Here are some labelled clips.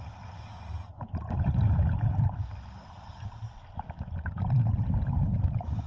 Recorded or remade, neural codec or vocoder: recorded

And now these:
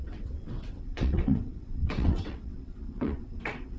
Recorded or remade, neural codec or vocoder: remade, vocoder, WaveNeXt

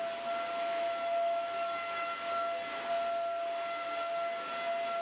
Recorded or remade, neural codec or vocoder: recorded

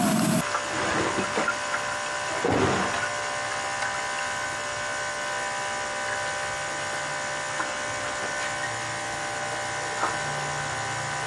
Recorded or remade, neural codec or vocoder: recorded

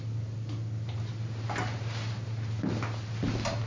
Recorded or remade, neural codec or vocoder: recorded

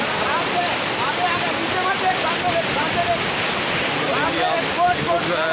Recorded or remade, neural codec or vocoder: recorded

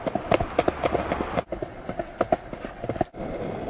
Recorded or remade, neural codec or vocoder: recorded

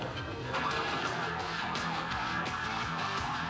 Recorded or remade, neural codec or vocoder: remade, codec, SNAC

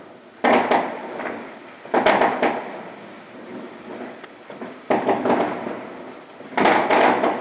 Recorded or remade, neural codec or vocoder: recorded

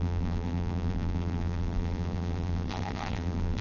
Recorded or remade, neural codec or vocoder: remade, vocoder, BigVGAN v2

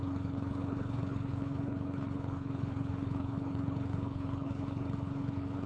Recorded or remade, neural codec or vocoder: remade, codec, HILCodec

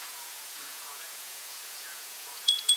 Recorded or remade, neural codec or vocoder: remade, vocoder, Vocos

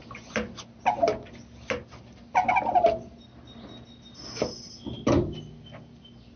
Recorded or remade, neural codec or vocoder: recorded